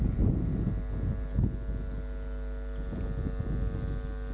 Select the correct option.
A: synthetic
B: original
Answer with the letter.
B